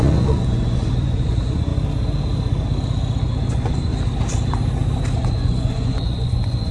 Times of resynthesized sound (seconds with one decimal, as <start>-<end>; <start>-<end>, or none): 0.0-1.7; 3.5-3.9; 5.2-6.7